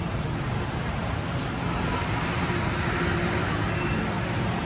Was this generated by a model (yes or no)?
no